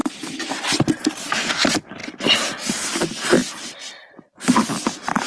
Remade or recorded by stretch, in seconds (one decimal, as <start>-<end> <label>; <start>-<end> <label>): 0.0-5.3 recorded